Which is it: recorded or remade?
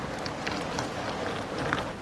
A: recorded